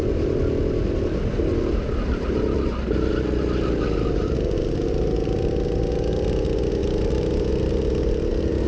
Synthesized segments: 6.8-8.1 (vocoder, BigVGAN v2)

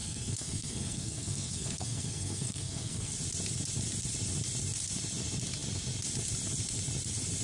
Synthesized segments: 0.0-3.1 (codec, SNAC)

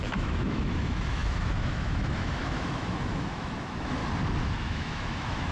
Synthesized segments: 0.0-4.0 (autoencoder, DAC-VAE); 4.5-5.5

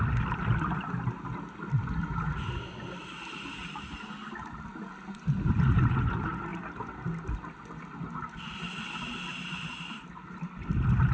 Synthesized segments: none

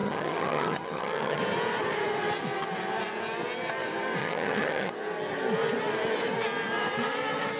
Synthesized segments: 0.0-1.4 (vocoder, HiFi-GAN); 4.2-4.9

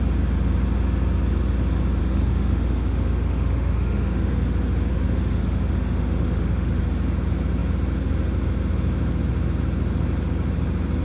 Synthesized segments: 2.0-4.3 (autoencoder, DAC-VAE); 4.9-6.8